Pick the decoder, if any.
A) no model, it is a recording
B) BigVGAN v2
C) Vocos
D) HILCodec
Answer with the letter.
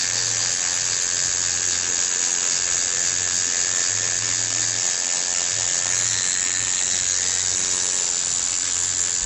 A